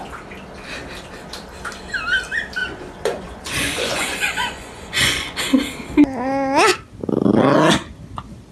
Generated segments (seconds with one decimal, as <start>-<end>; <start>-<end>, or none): 2.6-5.4